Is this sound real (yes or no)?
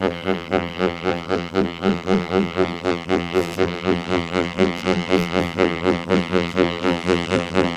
no